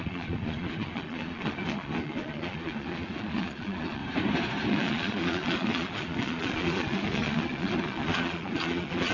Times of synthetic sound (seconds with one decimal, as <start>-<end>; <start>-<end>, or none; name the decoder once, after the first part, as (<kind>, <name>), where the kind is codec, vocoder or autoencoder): 0.0-4.0 (vocoder, Vocos); 4.7-9.1